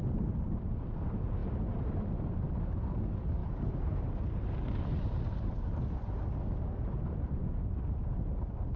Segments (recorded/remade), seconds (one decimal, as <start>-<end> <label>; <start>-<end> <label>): 0.0-3.4 recorded; 3.4-4.1 remade; 4.1-8.8 recorded